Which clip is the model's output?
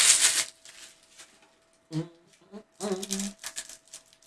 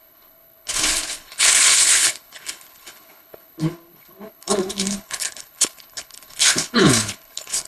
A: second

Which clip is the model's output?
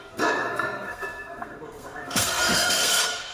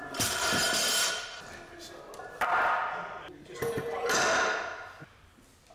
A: first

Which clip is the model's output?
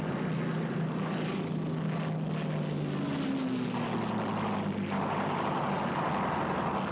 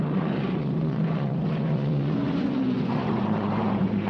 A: second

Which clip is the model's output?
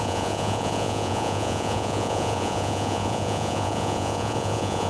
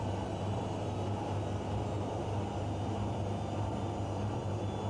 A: first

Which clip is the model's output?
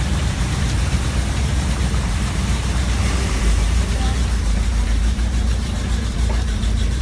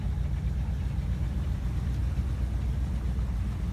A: first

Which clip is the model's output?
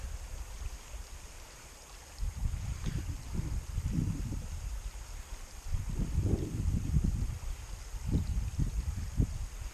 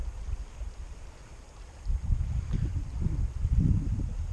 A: first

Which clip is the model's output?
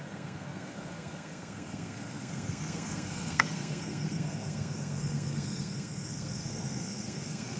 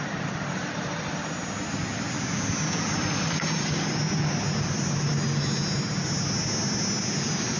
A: first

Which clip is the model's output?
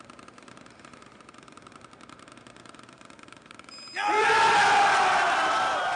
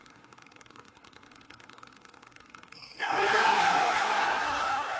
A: second